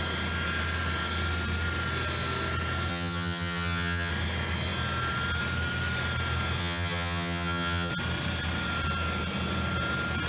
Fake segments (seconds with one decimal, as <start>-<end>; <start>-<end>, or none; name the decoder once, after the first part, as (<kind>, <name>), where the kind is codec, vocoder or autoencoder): 2.9-4.1 (vocoder, HiFi-GAN); 6.6-7.9